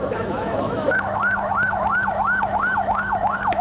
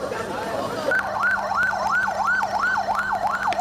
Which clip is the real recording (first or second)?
second